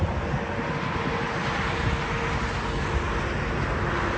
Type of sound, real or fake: real